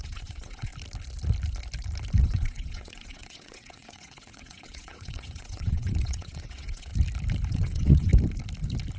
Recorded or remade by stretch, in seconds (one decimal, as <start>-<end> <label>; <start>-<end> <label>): 0.0-0.7 remade; 0.7-2.2 recorded; 2.2-6.9 remade; 6.9-7.5 recorded; 7.5-8.1 remade; 8.1-9.0 recorded